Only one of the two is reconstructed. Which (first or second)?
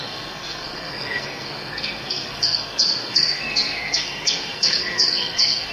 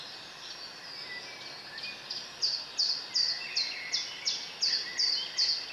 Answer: first